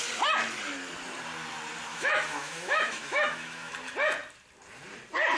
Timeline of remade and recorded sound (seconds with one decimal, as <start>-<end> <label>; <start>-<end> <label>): 0.0-1.9 recorded; 1.9-3.7 remade; 3.7-5.4 recorded